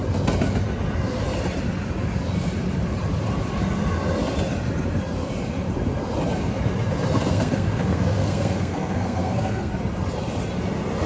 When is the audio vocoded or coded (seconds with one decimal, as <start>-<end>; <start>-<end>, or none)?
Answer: 7.3-9.7